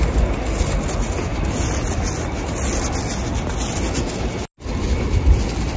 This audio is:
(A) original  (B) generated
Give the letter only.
A